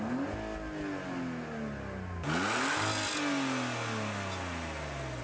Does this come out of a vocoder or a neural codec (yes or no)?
no